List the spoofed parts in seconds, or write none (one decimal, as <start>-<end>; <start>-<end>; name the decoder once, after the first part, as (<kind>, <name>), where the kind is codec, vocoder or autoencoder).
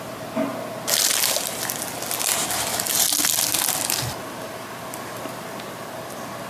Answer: none